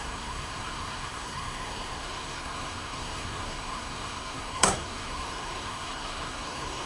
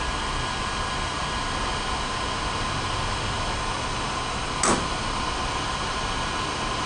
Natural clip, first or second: second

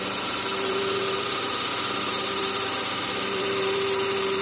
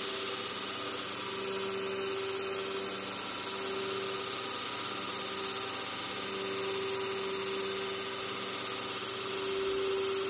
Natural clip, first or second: second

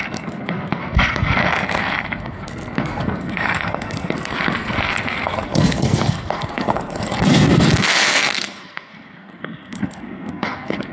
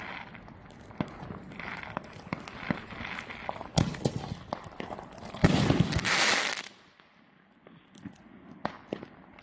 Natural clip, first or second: second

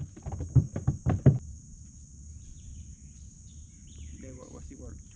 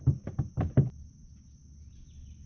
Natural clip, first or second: second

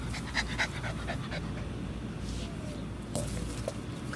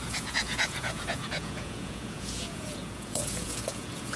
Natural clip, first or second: first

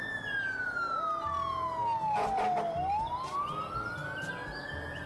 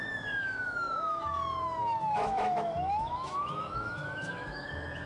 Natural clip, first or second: first